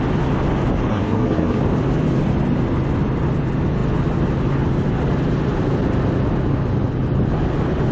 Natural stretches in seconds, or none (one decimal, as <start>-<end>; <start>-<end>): 0.0-0.9; 1.6-7.9